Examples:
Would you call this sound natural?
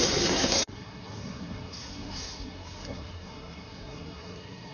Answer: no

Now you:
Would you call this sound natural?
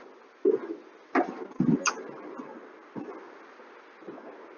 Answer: yes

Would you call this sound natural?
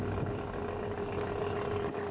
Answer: yes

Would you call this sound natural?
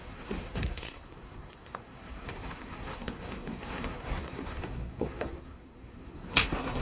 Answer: no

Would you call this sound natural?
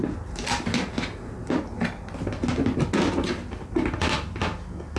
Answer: yes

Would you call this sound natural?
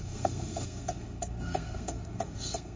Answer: no